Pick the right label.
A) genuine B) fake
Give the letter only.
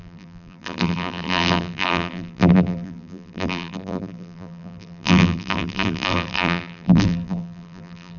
B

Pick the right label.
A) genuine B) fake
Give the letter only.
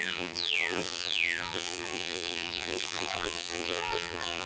B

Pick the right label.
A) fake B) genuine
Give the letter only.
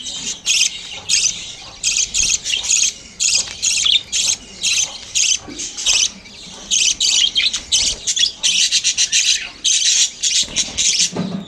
B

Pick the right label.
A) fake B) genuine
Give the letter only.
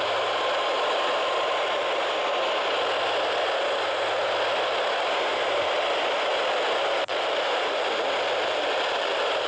B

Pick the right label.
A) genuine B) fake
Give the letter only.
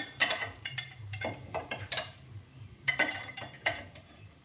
B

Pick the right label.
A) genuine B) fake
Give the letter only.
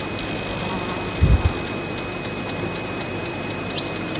B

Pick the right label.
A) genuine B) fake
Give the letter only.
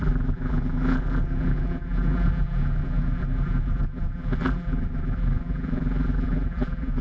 B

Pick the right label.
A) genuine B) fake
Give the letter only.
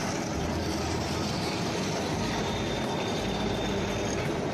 B